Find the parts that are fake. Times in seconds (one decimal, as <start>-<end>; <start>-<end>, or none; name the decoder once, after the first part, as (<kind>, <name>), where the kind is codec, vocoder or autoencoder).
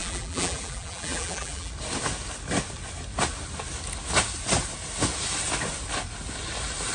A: 0.0-1.7 (vocoder, BigVGAN v2)